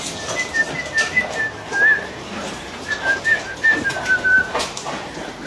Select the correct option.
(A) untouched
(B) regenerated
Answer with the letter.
A